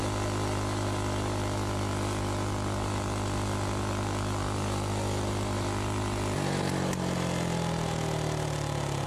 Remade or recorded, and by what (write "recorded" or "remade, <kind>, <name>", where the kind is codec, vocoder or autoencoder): recorded